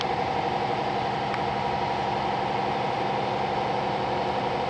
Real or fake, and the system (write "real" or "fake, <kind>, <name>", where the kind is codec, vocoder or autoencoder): real